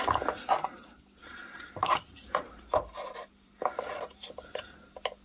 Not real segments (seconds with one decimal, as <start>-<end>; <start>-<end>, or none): 1.2-4.3